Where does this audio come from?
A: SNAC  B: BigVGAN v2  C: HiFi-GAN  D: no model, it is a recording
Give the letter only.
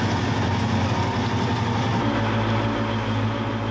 D